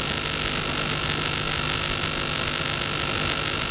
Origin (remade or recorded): recorded